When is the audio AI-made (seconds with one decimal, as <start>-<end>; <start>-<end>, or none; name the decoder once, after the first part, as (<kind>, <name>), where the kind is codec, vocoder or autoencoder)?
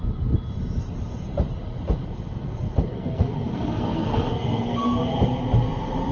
2.9-5.0 (codec, SNAC)